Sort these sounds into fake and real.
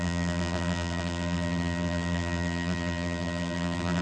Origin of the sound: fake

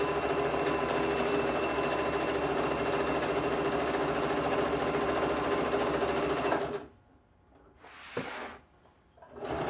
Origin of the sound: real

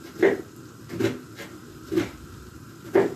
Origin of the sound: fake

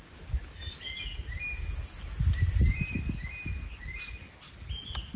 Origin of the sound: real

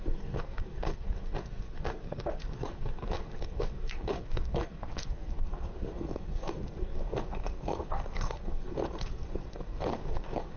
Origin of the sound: fake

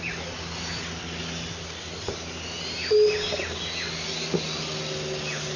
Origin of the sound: real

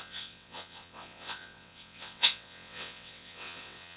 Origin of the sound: fake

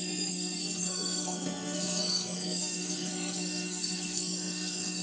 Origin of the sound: fake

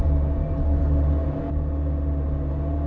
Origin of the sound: real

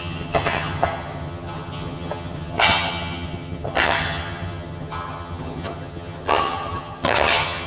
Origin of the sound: fake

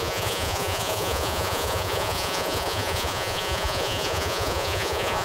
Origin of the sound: fake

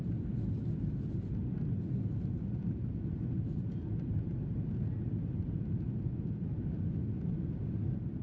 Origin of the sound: real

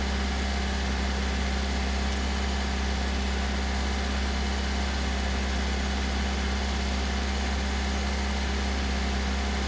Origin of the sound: real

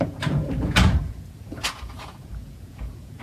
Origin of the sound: fake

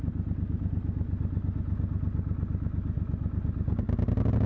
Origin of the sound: real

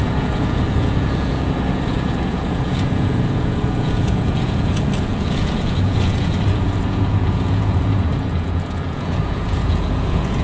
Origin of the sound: fake